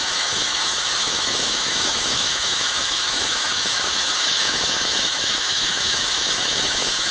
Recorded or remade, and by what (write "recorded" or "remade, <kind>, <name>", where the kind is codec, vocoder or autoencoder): remade, autoencoder, DAC-VAE